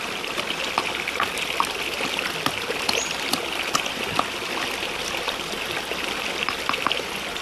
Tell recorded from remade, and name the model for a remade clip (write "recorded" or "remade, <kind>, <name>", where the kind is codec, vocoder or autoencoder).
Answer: recorded